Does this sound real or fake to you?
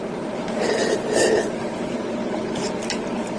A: real